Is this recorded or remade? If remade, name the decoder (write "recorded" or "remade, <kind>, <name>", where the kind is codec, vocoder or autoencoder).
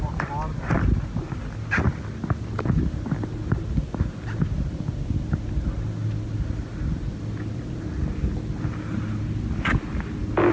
recorded